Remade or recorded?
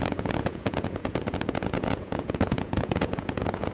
remade